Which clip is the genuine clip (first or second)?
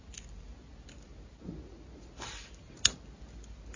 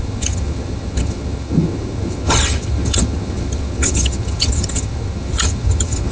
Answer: first